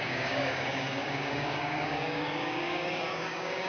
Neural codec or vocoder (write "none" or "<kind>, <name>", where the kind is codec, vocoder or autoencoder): codec, DAC